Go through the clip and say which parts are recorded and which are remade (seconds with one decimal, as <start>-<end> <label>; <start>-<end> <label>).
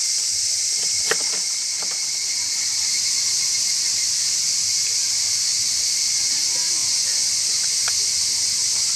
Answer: 0.0-6.8 recorded; 6.8-8.3 remade; 8.3-9.0 recorded